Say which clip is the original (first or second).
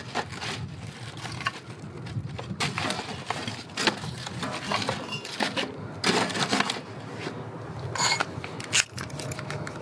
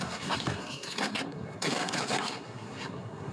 first